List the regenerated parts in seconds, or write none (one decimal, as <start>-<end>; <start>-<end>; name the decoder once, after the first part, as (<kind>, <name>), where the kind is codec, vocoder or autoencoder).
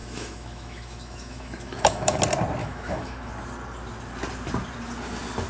0.0-2.2 (autoencoder, DAC-VAE); 2.6-3.3